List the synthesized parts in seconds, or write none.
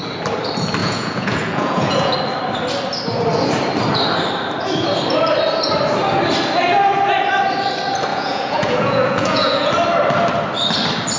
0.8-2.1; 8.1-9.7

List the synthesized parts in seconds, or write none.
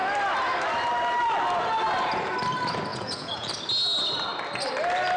2.9-3.5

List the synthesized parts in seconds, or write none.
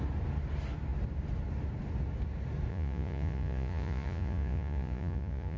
2.7-5.6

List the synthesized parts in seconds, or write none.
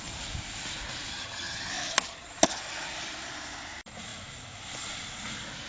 1.1-1.7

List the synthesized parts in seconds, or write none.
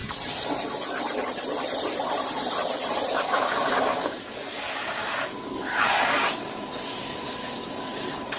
3.1-8.4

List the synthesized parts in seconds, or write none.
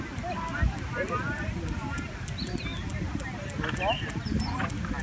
none